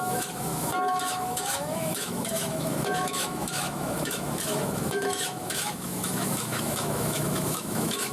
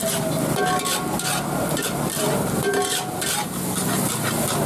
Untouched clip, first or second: second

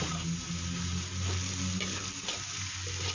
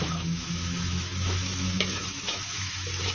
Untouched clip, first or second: first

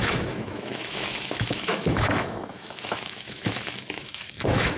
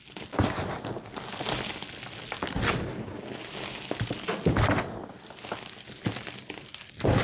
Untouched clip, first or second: second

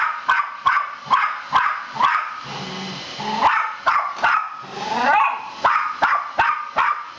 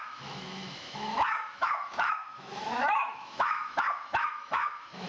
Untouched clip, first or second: first